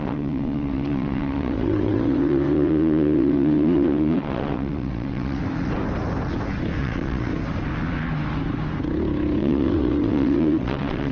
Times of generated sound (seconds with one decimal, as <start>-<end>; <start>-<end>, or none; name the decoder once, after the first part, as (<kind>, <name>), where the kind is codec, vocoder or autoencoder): 0.0-5.4 (vocoder, WaveNeXt); 6.8-7.3; 9.4-11.1